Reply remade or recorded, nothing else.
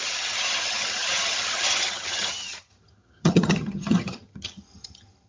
remade